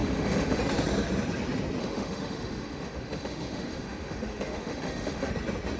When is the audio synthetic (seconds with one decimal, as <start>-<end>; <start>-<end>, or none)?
0.0-0.6; 1.8-5.3